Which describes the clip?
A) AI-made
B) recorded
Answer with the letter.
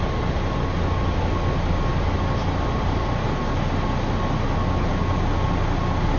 B